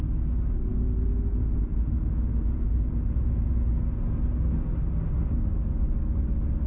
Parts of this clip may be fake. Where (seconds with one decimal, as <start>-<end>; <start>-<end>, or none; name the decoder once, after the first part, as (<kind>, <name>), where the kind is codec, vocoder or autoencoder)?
0.7-4.1 (vocoder, Vocos)